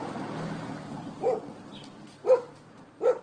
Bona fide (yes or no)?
yes